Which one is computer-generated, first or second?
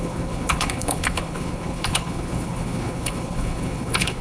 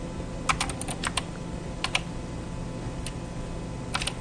first